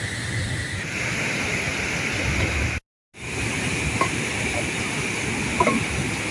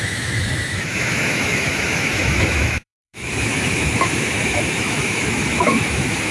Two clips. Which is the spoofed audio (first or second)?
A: second